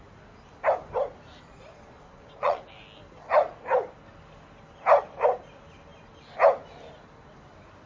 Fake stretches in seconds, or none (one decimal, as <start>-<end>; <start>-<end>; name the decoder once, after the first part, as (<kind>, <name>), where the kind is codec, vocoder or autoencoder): 1.5-2.6 (vocoder, Vocos)